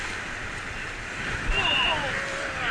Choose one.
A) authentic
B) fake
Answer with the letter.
A